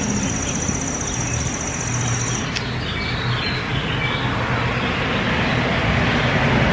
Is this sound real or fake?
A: real